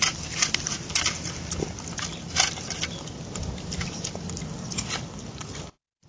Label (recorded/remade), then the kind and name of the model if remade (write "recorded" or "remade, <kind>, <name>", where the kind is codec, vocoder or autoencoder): recorded